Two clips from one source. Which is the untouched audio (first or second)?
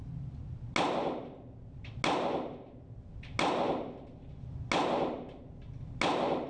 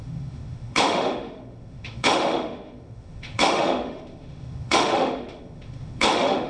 first